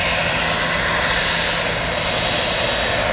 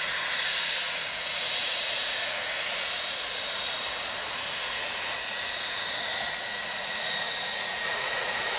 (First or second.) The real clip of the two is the first